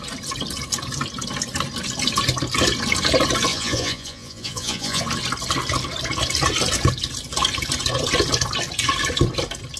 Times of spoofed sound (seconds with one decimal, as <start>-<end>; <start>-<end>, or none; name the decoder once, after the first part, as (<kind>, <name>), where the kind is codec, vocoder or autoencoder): 3.5-5.0 (vocoder, Vocos)